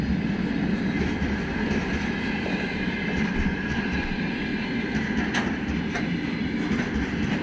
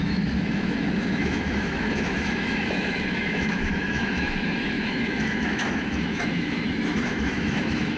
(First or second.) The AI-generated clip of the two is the second